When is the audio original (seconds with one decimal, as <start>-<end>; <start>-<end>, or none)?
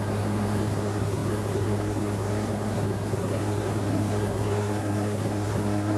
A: none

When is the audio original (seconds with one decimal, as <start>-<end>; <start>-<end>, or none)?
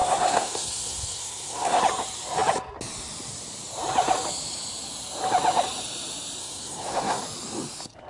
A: 1.8-6.4; 7.2-8.1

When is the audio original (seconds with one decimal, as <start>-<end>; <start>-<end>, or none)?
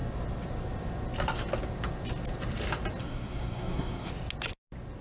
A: 0.0-3.0; 4.1-5.0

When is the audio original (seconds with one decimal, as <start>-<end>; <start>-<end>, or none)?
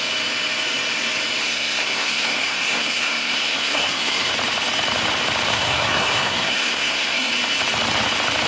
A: 0.0-1.4; 4.3-5.5; 7.3-8.5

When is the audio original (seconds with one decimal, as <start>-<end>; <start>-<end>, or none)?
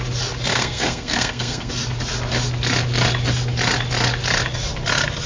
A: 0.0-0.5; 1.7-5.3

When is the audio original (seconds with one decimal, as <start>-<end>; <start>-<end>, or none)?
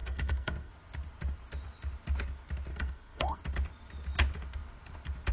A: 0.7-2.7; 3.4-5.3